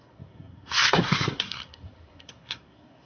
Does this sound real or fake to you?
fake